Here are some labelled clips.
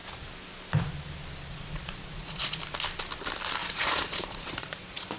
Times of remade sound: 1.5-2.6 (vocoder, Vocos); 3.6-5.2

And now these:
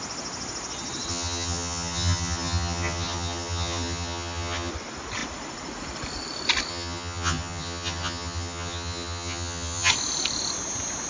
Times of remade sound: 1.1-4.7 (vocoder, HiFi-GAN); 6.7-9.9

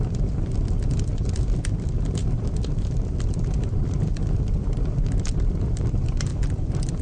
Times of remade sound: 2.2-5.4 (vocoder, BigVGAN v2); 6.3-7.0

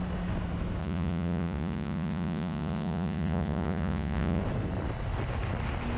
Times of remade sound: 0.8-4.4 (vocoder, Vocos)

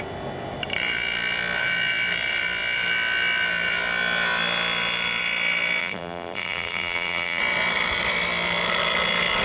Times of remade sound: 5.8-7.4 (vocoder, BigVGAN v2)

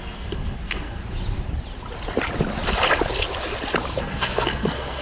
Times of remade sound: 0.0-1.0 (codec, SNAC); 4.0-5.0

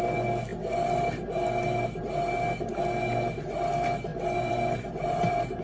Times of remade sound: 4.1-5.6 (vocoder, BigVGAN v2)

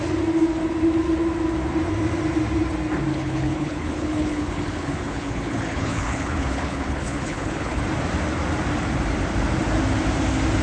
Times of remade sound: 3.1-7.8 (codec, HILCodec)